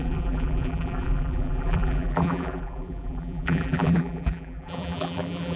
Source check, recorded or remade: remade